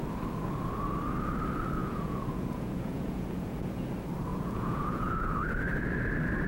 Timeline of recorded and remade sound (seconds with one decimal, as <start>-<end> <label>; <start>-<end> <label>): 0.0-1.8 recorded; 1.8-3.9 remade; 3.9-4.3 recorded; 4.3-5.3 remade; 5.3-6.5 recorded

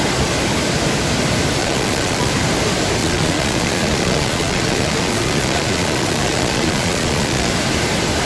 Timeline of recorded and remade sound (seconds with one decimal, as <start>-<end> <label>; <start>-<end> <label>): 0.0-1.6 recorded; 1.6-2.3 remade; 2.3-3.0 recorded; 3.0-7.5 remade; 7.5-8.2 recorded